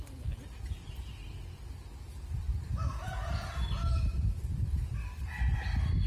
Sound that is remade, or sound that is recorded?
recorded